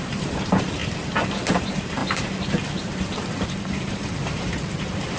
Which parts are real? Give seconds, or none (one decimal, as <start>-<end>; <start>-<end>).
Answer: 0.8-1.5